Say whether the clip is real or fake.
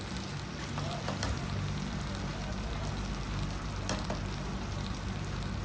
real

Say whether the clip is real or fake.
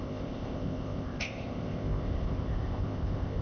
fake